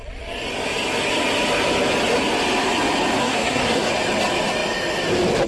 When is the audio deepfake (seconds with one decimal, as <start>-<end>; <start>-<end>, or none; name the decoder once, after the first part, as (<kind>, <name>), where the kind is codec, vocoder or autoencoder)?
3.2-3.9 (codec, SNAC)